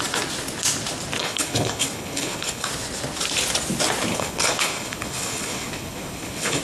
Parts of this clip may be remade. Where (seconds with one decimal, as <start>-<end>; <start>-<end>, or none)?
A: 1.2-2.7; 4.1-6.6